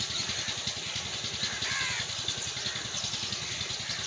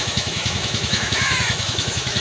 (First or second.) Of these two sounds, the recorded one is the first